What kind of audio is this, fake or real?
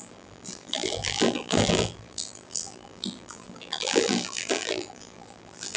fake